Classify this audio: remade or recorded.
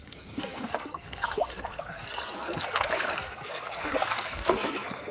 remade